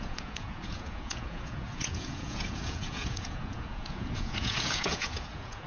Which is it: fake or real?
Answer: fake